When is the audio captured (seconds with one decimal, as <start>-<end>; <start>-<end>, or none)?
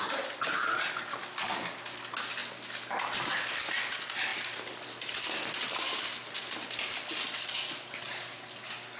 0.0-9.0